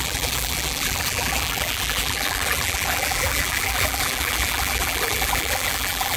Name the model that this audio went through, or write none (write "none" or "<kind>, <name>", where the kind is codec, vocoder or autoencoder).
vocoder, BigVGAN v2